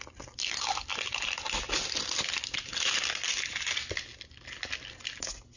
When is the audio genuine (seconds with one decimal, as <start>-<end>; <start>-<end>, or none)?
0.0-5.6